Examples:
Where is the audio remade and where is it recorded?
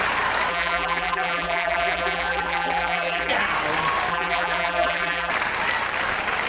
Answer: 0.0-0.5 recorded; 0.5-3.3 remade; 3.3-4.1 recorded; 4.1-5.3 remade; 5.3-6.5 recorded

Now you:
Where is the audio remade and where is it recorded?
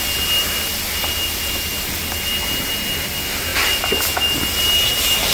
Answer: 0.0-5.3 recorded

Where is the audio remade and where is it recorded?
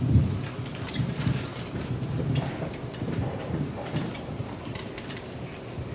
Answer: 0.0-1.5 recorded; 1.5-5.0 remade; 5.0-5.9 recorded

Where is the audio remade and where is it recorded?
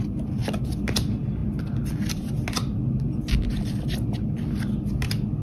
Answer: 0.0-5.4 recorded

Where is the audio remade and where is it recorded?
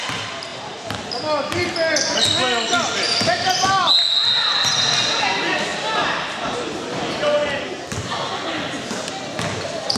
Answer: 0.0-0.5 recorded; 0.5-1.0 remade; 1.0-5.7 recorded; 5.7-6.7 remade; 6.7-10.0 recorded